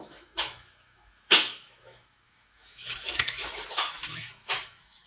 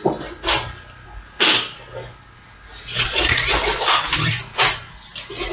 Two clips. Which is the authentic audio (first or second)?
second